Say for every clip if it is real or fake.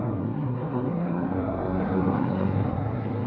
fake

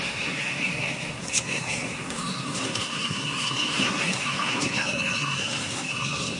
fake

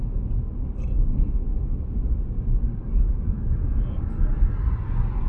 real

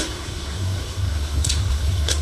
fake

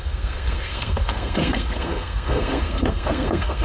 fake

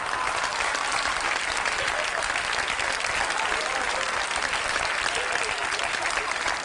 real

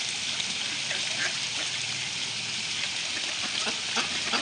real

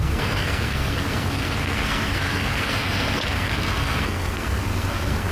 fake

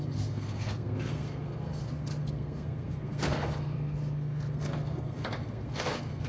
fake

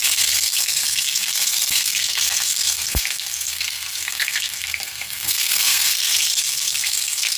fake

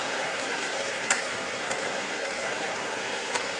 fake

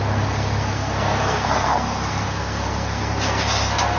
fake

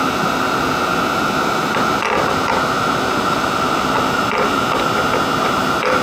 real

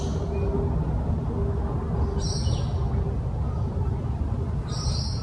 real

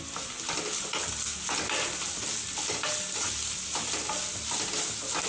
real